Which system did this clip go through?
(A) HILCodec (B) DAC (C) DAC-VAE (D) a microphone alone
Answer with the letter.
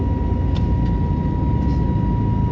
D